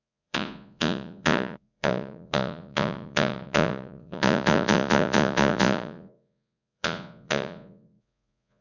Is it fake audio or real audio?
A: fake